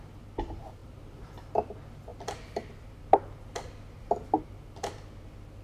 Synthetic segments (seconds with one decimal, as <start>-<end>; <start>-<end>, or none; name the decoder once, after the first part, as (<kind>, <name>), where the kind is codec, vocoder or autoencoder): 0.8-1.7 (vocoder, BigVGAN v2); 2.1-4.9